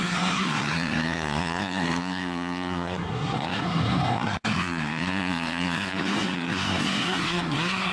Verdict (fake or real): fake